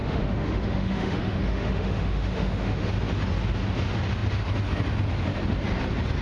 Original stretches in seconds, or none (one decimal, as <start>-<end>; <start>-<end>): 2.9-6.2